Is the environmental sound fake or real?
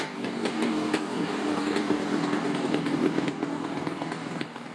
fake